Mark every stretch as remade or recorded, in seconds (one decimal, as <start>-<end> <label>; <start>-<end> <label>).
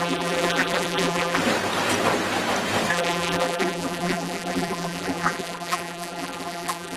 0.0-1.4 remade; 1.4-2.9 recorded; 2.9-7.0 remade